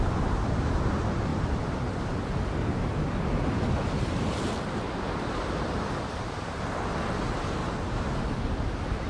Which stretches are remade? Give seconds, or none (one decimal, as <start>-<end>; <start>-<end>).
1.3-1.9; 7.6-8.4